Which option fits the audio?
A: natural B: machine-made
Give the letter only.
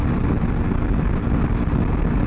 A